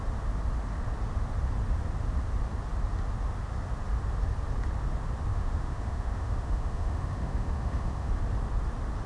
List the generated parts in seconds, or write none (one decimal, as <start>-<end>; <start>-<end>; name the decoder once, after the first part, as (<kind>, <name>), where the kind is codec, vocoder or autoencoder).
5.3-8.1 (autoencoder, DAC-VAE)